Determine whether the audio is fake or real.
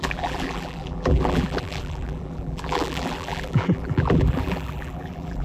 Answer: fake